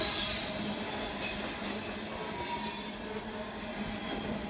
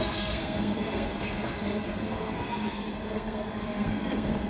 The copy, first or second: second